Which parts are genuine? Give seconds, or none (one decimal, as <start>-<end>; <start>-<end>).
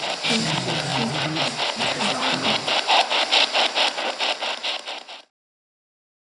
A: 0.0-2.6; 3.3-6.3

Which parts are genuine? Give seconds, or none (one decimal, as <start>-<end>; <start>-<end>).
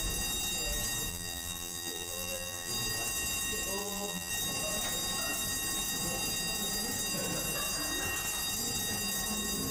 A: 0.0-1.1; 2.7-3.8; 4.3-9.7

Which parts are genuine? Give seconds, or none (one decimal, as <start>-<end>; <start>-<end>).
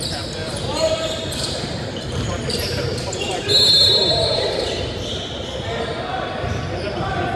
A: 0.0-0.4; 4.8-7.4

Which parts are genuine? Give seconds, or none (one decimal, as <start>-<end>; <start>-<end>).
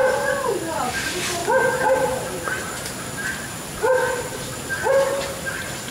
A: 0.0-5.9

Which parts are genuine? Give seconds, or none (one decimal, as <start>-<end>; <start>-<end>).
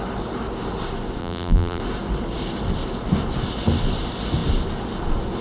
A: 0.0-1.2; 1.8-5.4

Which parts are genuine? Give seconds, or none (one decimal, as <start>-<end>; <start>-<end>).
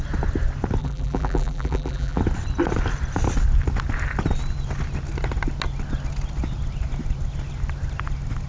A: 0.0-0.8; 2.2-8.5